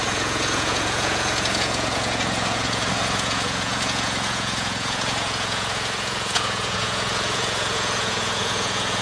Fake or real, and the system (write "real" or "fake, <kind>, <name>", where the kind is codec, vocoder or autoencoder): fake, vocoder, Vocos